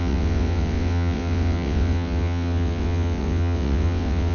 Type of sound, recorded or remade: remade